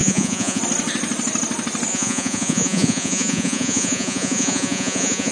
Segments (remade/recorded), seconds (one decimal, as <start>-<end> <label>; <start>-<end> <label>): 0.0-0.6 remade; 0.6-1.9 recorded; 1.9-5.3 remade

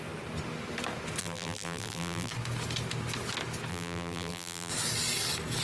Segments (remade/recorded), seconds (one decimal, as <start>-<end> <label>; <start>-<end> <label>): 0.0-1.2 recorded; 1.2-2.3 remade; 2.3-3.7 recorded; 3.7-4.7 remade; 4.7-5.6 recorded